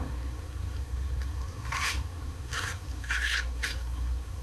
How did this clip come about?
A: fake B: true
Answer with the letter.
A